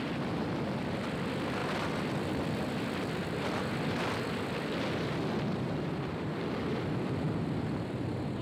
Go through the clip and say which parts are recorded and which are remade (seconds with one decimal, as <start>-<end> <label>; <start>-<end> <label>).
0.0-8.4 remade